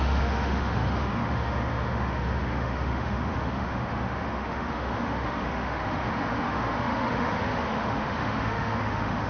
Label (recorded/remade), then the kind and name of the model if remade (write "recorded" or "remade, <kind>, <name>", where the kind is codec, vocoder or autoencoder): remade, autoencoder, DAC-VAE